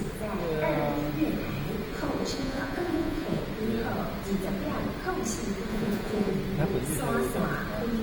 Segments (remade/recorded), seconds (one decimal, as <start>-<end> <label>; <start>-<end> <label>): 0.0-1.9 recorded; 1.9-3.4 remade; 3.4-5.7 recorded; 5.7-6.3 remade; 6.3-8.0 recorded